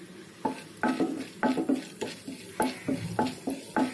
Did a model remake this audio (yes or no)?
no